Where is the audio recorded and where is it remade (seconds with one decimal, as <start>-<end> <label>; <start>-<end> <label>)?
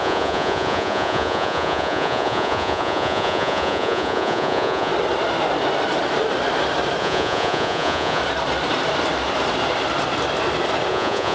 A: 0.0-4.9 remade; 4.9-7.0 recorded; 7.0-8.2 remade; 8.2-10.9 recorded; 10.9-11.3 remade